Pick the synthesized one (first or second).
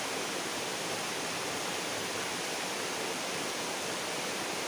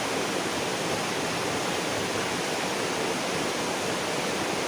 first